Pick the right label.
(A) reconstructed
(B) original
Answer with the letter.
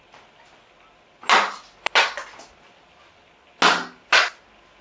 B